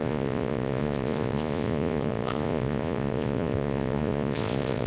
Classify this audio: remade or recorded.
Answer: remade